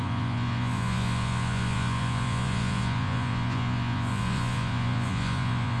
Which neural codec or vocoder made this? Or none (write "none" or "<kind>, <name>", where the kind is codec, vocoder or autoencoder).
vocoder, Vocos